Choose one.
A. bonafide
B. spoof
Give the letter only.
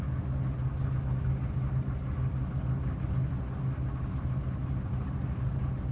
A